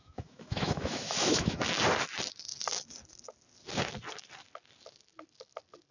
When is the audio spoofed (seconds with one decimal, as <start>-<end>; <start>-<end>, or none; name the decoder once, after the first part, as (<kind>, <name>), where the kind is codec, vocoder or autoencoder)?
0.0-1.8 (autoencoder, DAC-VAE)